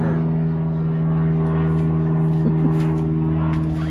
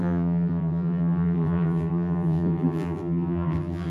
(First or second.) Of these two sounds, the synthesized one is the second